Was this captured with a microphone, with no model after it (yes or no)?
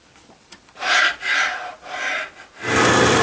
yes